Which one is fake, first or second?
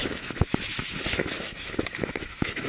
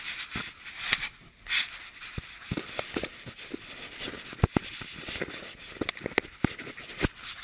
first